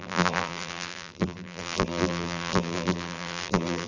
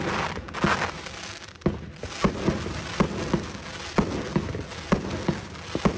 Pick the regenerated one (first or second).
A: first